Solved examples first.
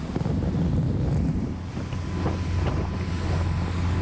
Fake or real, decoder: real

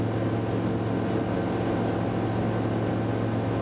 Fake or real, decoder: real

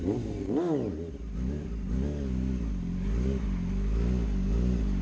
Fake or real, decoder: real